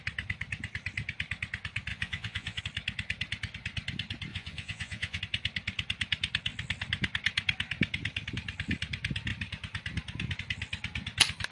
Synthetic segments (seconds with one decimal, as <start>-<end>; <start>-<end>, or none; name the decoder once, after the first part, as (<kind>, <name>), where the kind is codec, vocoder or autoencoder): 1.9-2.6 (vocoder, Vocos); 4.3-5.2